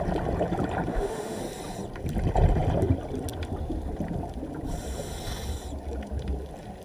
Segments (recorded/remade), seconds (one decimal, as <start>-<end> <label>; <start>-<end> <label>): 0.0-0.9 recorded; 0.9-1.4 remade; 1.4-6.8 recorded